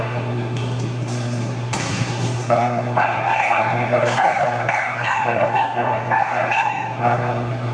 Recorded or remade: remade